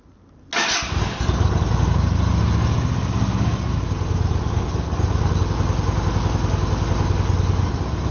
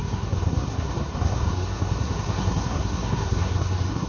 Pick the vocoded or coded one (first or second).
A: second